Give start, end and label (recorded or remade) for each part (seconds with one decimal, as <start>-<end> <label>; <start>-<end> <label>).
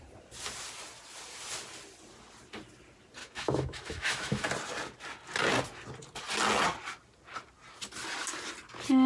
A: 0.0-3.2 recorded; 3.2-4.5 remade; 4.5-9.1 recorded